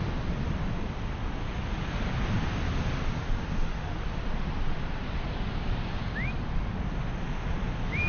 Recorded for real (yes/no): yes